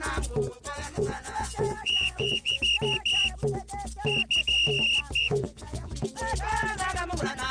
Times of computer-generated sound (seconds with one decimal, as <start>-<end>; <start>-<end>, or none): 0.8-2.6; 5.2-5.9